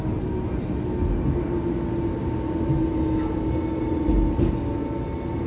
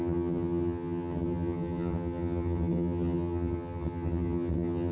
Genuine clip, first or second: first